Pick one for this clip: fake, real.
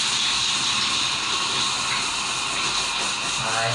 real